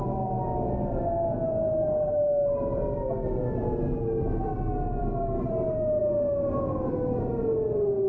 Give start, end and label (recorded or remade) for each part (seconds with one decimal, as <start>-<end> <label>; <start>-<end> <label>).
0.0-8.1 recorded